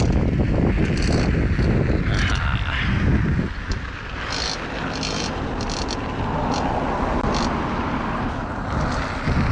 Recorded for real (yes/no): yes